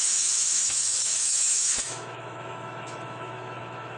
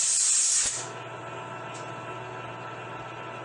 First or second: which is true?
second